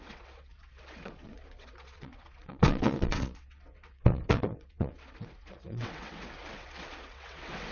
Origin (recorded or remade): remade